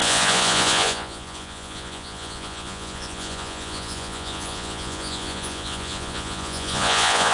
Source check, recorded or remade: remade